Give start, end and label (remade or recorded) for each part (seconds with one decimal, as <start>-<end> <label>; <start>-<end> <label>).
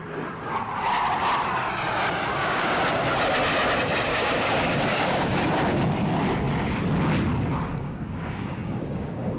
0.0-2.3 recorded; 2.3-2.8 remade; 2.8-4.1 recorded; 4.1-5.4 remade; 5.4-7.7 recorded; 7.7-9.4 remade